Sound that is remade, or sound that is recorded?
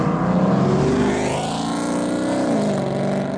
recorded